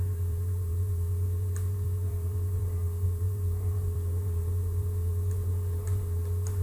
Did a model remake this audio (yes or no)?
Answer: yes